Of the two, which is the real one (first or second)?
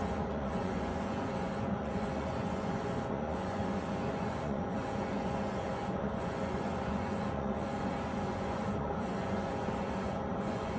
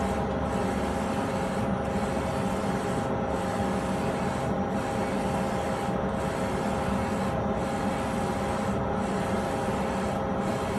second